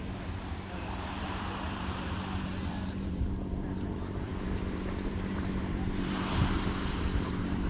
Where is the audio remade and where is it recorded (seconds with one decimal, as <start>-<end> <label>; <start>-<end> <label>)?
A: 0.0-7.7 remade